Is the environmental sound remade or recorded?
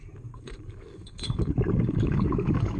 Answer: remade